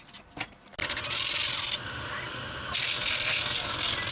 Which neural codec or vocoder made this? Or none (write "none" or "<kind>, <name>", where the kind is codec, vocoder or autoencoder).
none